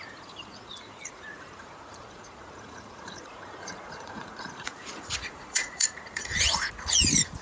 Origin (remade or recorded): remade